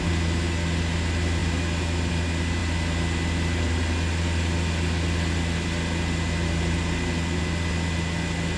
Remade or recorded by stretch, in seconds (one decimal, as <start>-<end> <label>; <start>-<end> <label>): 0.0-8.6 recorded